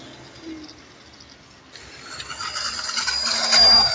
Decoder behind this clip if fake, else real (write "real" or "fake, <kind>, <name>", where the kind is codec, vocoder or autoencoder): real